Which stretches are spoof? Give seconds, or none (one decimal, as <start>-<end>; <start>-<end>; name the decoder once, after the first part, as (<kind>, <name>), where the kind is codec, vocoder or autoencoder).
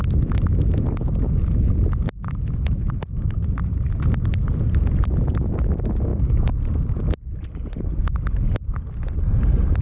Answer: none